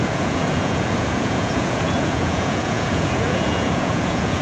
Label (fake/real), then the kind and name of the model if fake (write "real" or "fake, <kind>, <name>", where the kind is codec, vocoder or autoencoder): fake, vocoder, Vocos